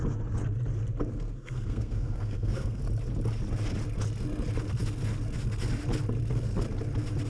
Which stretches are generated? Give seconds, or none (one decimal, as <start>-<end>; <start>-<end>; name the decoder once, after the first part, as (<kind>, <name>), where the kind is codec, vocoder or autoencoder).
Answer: 1.1-2.8 (codec, SNAC)